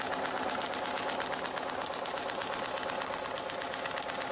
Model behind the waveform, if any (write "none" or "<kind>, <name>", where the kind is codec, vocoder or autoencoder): none